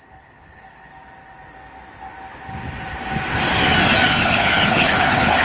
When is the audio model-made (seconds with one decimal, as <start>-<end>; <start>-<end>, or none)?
0.0-0.9; 4.1-5.4